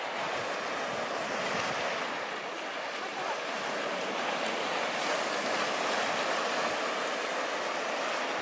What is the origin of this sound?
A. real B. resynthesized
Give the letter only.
A